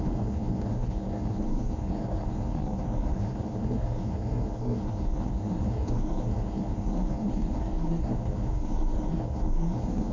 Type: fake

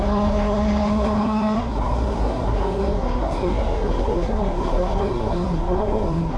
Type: fake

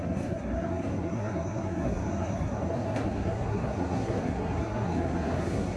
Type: fake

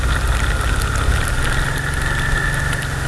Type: real